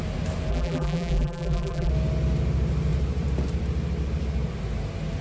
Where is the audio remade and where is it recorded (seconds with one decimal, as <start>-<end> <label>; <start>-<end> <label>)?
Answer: 0.0-0.5 recorded; 0.5-1.9 remade; 1.9-5.2 recorded